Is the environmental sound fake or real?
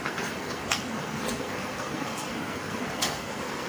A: fake